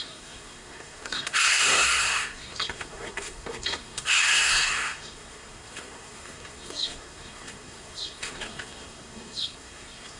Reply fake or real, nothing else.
fake